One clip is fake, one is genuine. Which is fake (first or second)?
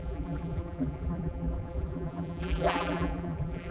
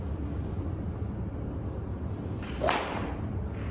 first